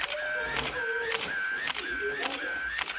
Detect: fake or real real